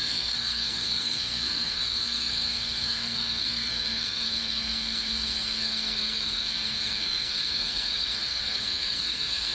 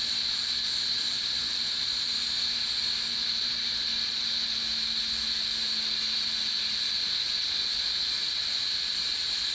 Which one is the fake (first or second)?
first